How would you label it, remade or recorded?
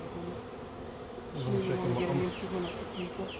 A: recorded